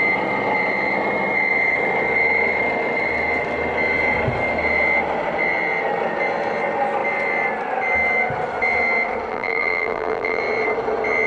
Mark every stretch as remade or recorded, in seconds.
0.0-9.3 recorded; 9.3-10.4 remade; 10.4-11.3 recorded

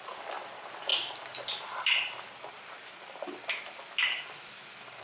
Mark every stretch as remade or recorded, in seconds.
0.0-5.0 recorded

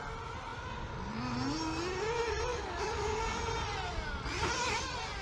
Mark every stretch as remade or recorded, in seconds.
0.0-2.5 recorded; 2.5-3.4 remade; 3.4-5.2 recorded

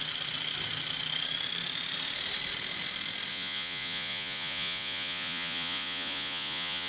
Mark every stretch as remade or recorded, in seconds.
0.0-3.3 recorded; 3.3-6.9 remade

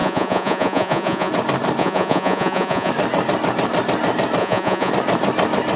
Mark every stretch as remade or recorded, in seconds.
0.0-1.3 remade; 1.3-1.8 recorded; 1.8-2.9 remade; 2.9-4.4 recorded; 4.4-4.9 remade; 4.9-5.8 recorded

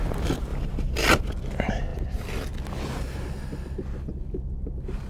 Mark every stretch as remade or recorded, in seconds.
0.0-0.5 recorded; 0.5-1.1 remade; 1.1-1.9 recorded; 1.9-3.4 remade; 3.4-5.1 recorded